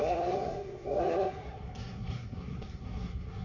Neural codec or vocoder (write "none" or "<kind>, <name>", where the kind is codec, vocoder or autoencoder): codec, SNAC